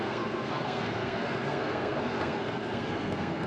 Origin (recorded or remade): remade